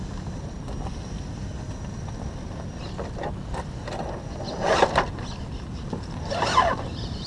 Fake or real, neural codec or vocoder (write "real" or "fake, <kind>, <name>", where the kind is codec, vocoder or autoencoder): real